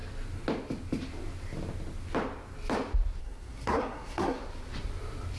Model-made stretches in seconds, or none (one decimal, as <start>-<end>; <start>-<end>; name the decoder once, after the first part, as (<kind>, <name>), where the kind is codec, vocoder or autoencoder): 3.2-4.4 (codec, SNAC)